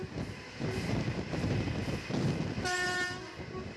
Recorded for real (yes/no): yes